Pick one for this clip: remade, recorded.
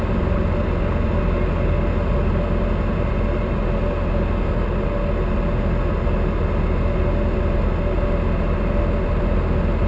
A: recorded